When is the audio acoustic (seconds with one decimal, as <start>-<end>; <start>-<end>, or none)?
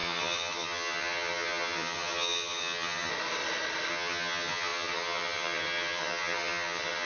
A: 3.1-3.9